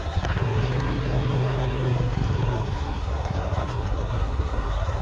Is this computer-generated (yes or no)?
yes